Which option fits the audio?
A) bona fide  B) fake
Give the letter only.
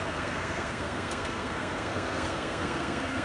B